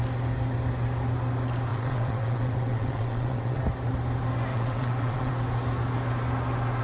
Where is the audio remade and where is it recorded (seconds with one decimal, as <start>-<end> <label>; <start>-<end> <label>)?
0.0-1.7 recorded; 1.7-3.6 remade; 3.6-4.5 recorded; 4.5-5.3 remade; 5.3-6.8 recorded